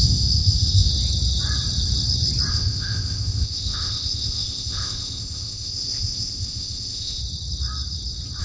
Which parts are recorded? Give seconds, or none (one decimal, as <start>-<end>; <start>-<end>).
0.9-2.5; 7.2-8.4